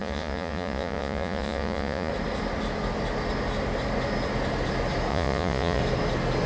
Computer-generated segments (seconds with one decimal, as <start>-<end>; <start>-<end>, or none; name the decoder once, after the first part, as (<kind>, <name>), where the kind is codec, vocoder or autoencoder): 0.0-2.1 (vocoder, Vocos); 5.1-5.8